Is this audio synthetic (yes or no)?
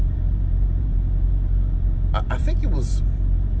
yes